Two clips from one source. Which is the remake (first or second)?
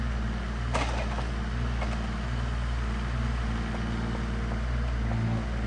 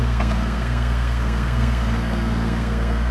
second